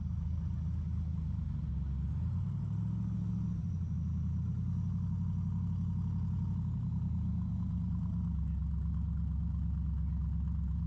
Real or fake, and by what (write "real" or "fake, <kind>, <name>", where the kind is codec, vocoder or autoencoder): real